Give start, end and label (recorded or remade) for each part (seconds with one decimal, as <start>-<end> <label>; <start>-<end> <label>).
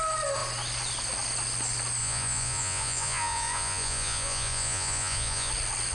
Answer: 0.0-2.0 recorded; 2.0-5.5 remade; 5.5-5.9 recorded